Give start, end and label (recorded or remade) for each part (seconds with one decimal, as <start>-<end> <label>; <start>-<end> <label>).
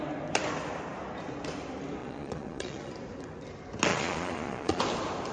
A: 0.0-2.0 recorded; 2.0-2.9 remade; 2.9-3.9 recorded; 3.9-4.8 remade; 4.8-5.3 recorded